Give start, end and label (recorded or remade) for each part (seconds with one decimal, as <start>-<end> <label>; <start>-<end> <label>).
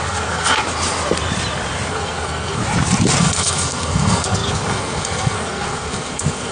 0.0-0.6 remade; 0.6-1.9 recorded; 1.9-2.6 remade; 2.6-3.2 recorded; 3.2-6.5 remade